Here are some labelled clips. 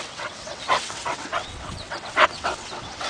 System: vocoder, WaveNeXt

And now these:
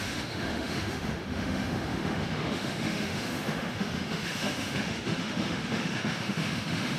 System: autoencoder, DAC-VAE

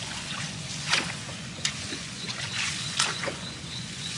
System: vocoder, Vocos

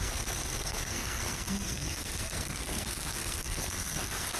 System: codec, SNAC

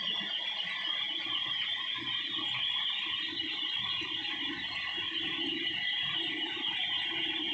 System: none